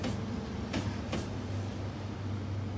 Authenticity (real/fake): real